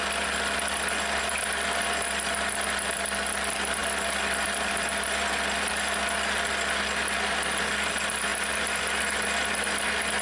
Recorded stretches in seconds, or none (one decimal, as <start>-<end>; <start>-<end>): 0.0-10.2